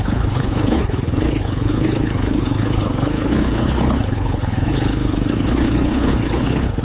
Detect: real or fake fake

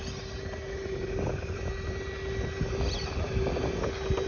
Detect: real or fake real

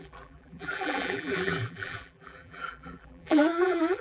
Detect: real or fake fake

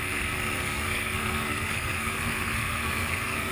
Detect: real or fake fake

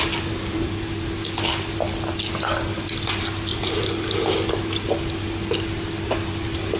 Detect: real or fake real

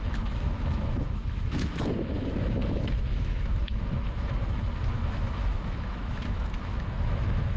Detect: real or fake fake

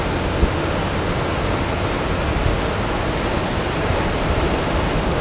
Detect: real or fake real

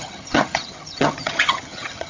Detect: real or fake fake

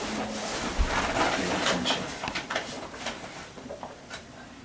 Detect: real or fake real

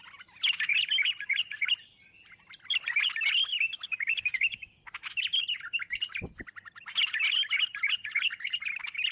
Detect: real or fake real